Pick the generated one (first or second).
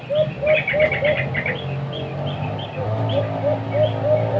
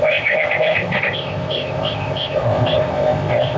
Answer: second